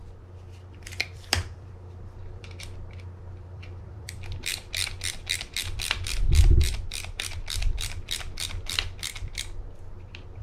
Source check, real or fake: fake